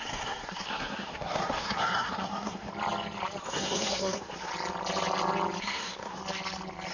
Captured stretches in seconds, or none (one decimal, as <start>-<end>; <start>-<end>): 2.7-3.4; 4.5-5.6; 6.2-6.9